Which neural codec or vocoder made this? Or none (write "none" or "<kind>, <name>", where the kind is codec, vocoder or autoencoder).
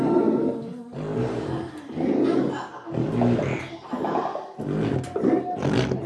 none